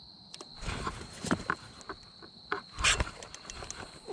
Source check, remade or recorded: recorded